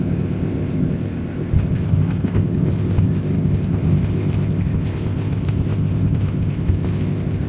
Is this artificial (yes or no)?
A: yes